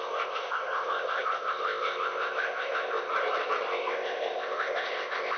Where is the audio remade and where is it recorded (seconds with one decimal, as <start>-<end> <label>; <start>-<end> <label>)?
0.0-3.1 remade; 3.1-3.7 recorded; 3.7-5.4 remade

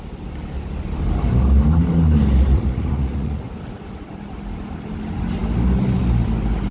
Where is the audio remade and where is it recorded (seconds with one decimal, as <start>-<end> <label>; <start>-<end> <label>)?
0.0-2.5 recorded; 2.5-3.5 remade; 3.5-6.7 recorded

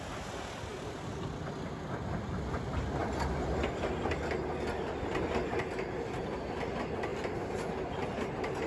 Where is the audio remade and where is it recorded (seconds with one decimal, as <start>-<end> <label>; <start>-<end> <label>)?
0.0-8.7 recorded

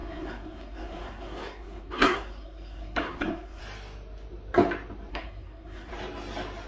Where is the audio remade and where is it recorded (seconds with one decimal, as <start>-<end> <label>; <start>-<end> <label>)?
0.0-3.6 remade; 3.6-5.1 recorded; 5.1-5.9 remade; 5.9-6.7 recorded